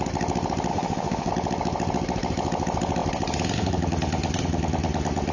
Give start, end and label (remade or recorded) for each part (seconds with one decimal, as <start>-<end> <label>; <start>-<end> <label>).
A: 0.0-0.7 recorded; 0.7-1.3 remade; 1.3-5.3 recorded

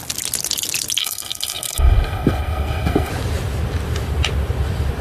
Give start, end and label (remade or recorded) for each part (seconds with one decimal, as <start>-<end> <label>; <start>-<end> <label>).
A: 0.0-1.0 recorded; 1.0-3.1 remade; 3.1-5.0 recorded